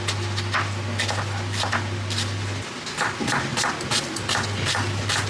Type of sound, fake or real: real